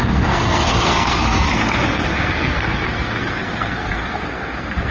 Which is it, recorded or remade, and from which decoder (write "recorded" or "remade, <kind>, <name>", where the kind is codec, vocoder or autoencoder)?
remade, codec, SNAC